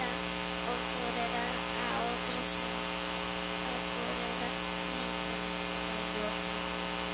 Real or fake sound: real